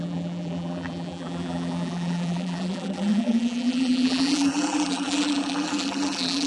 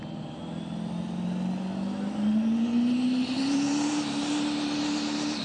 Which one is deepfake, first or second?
first